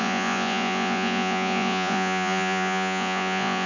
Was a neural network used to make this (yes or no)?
yes